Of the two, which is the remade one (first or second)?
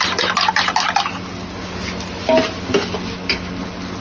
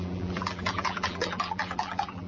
second